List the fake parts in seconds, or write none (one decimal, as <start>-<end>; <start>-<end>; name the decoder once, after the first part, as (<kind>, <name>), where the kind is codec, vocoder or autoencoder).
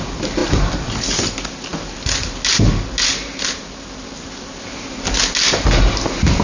none